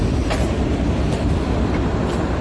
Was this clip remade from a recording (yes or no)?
no